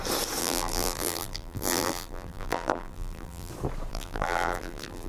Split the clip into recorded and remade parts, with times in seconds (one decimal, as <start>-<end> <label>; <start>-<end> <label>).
0.0-0.4 recorded; 0.4-3.5 remade; 3.5-3.9 recorded; 3.9-5.1 remade